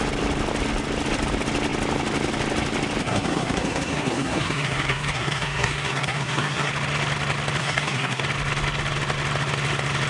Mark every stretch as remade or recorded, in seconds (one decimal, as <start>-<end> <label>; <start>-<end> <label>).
0.0-3.0 recorded; 3.0-6.7 remade; 6.7-7.6 recorded; 7.6-8.2 remade; 8.2-10.1 recorded

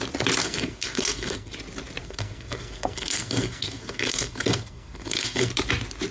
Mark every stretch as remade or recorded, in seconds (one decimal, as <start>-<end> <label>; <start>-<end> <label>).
0.0-0.4 recorded; 0.4-1.5 remade; 1.5-2.0 recorded; 2.0-5.5 remade; 5.5-6.1 recorded